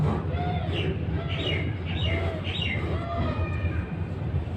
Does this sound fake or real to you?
real